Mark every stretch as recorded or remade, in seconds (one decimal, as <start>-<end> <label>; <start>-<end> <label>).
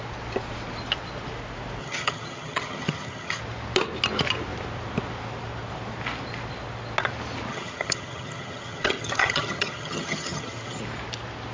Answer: 0.0-1.8 recorded; 1.8-3.4 remade; 3.4-7.5 recorded; 7.5-10.8 remade; 10.8-11.5 recorded